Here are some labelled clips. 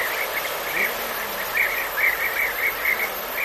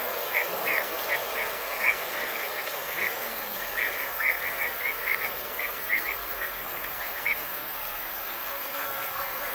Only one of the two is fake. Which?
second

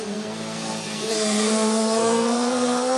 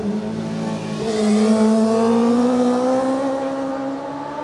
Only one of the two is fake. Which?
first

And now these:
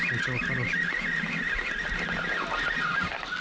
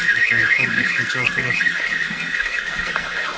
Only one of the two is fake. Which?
second